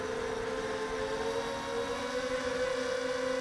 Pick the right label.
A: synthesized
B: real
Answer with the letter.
B